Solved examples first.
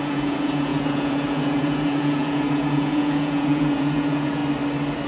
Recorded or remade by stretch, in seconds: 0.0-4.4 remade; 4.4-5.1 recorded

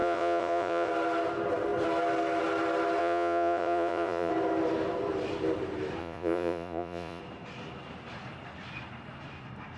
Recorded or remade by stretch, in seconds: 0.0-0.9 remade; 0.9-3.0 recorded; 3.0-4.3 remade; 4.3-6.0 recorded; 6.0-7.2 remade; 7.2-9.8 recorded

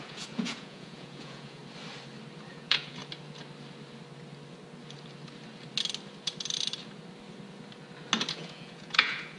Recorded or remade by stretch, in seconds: 0.0-1.6 remade; 1.6-2.5 recorded; 2.5-3.0 remade; 3.0-8.3 recorded; 8.3-9.4 remade